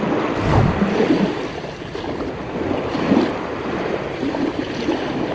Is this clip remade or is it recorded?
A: recorded